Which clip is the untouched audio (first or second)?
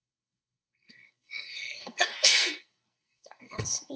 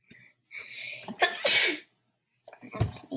second